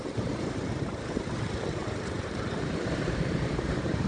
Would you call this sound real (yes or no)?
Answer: no